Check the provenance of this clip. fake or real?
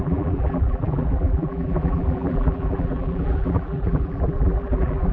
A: fake